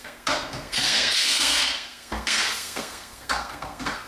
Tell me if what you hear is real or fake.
fake